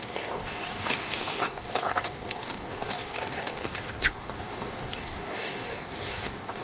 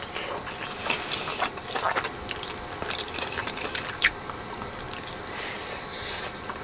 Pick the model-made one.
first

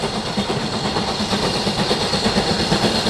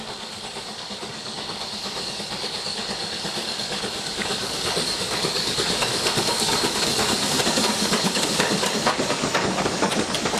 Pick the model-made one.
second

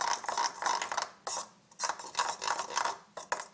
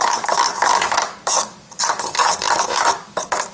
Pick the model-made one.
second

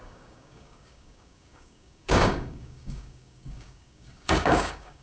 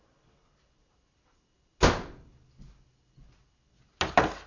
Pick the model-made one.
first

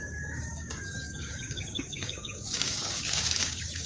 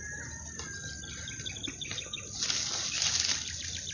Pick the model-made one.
first